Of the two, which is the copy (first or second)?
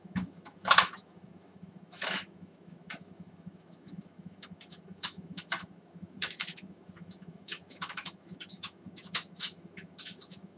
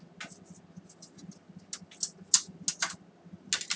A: first